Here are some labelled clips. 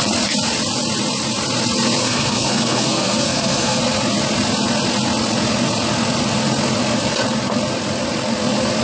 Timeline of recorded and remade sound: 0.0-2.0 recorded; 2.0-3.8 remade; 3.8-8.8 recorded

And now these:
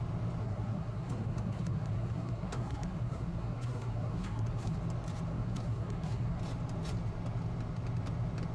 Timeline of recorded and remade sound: 0.0-0.4 recorded; 0.4-4.8 remade; 4.8-5.3 recorded; 5.3-6.4 remade; 6.4-8.5 recorded

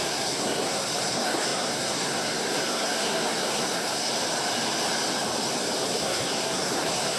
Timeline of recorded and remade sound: 0.0-4.1 remade; 4.1-5.8 recorded; 5.8-7.2 remade

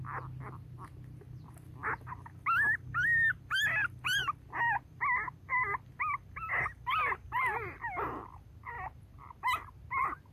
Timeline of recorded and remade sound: 0.0-10.3 recorded